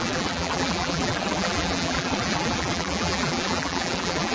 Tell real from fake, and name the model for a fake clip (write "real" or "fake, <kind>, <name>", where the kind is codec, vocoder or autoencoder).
fake, vocoder, BigVGAN v2